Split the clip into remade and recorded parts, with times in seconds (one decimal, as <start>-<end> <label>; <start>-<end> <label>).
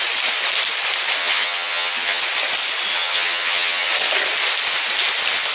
0.0-1.2 recorded; 1.2-2.2 remade; 2.2-2.9 recorded; 2.9-3.9 remade; 3.9-5.5 recorded